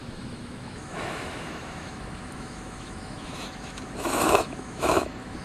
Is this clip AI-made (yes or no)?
yes